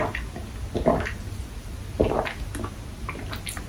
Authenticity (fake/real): real